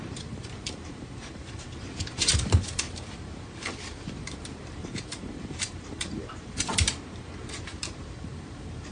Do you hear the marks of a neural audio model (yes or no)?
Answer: yes